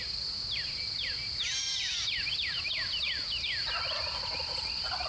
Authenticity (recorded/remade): recorded